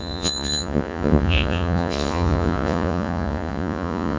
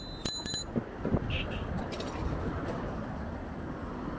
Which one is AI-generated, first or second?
first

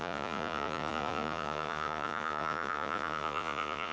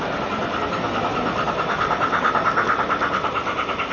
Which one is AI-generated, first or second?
first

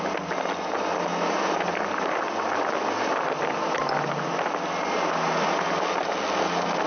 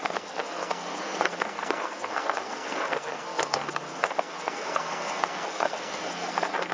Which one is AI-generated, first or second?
second